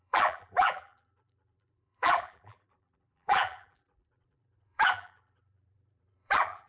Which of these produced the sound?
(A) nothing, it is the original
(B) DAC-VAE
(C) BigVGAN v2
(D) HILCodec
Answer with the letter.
C